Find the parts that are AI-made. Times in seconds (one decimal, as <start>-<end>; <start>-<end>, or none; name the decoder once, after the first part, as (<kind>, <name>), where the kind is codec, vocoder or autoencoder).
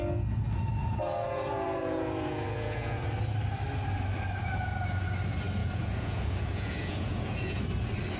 0.8-3.0 (vocoder, Vocos); 5.6-7.6